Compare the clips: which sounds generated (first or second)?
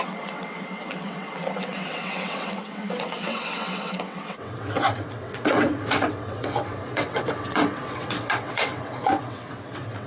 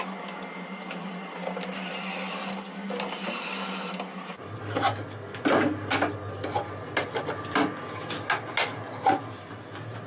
first